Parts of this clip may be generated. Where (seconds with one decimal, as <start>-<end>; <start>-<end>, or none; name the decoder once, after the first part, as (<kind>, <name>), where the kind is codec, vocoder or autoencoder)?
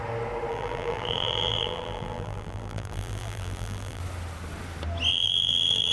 0.5-4.0 (vocoder, BigVGAN v2); 5.1-5.9